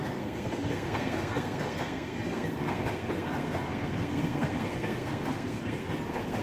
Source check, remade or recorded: remade